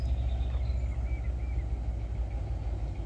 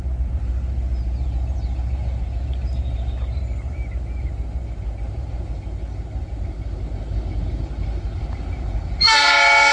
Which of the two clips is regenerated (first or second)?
second